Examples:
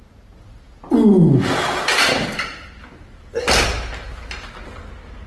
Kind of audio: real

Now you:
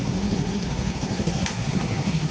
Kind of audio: fake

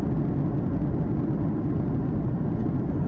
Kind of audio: real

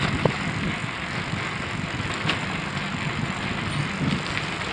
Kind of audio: real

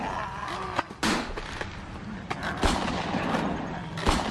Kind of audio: real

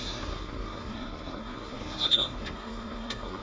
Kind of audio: fake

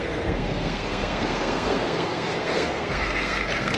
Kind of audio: fake